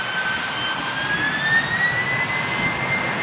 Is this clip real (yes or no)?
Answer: yes